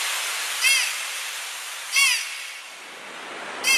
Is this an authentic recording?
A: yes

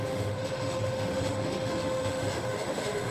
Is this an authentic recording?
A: no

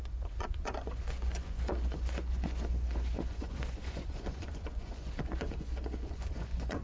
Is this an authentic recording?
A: no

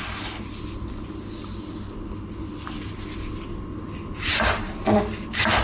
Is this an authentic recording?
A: yes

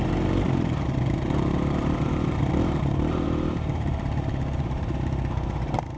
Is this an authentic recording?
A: no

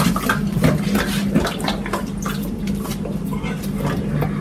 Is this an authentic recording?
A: yes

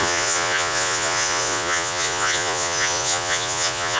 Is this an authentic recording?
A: no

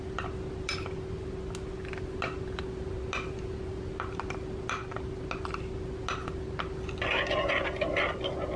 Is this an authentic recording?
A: yes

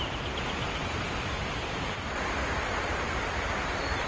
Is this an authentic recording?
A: yes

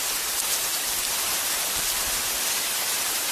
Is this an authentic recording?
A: yes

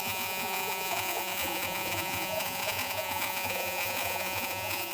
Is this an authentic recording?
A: no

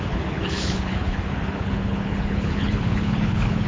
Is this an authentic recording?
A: no